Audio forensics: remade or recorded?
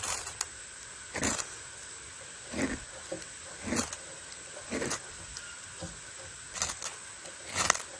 recorded